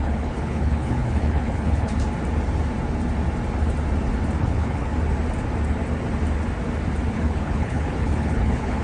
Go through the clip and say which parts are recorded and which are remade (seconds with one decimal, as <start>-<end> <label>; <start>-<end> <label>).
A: 0.0-1.9 remade; 1.9-4.4 recorded; 4.4-4.9 remade; 4.9-7.1 recorded; 7.1-8.8 remade